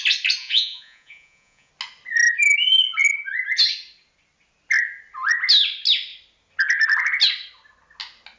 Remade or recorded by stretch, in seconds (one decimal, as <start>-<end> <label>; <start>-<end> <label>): 0.0-0.4 recorded; 0.4-1.7 remade; 1.7-8.4 recorded